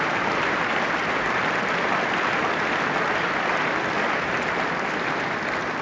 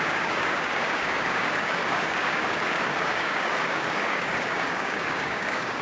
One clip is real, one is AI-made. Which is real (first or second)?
first